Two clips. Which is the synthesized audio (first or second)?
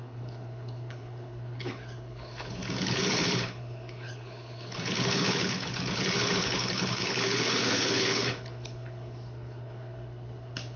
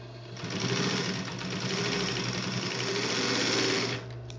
first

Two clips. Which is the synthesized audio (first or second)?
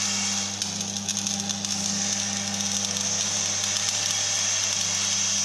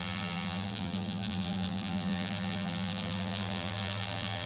second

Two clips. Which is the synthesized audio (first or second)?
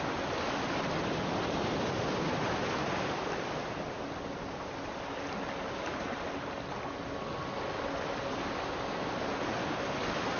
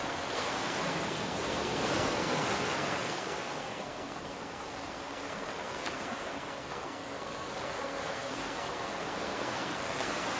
second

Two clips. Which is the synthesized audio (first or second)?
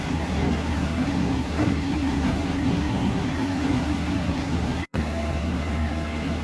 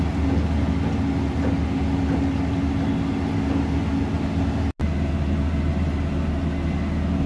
first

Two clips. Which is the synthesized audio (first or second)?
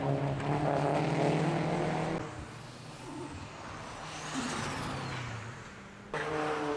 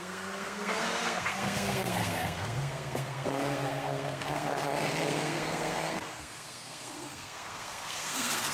second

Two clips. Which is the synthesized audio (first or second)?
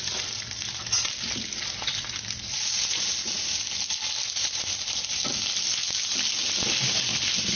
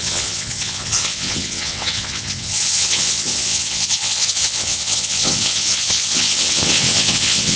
second